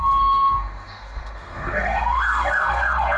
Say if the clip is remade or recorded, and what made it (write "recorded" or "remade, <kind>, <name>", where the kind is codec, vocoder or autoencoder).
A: remade, codec, SNAC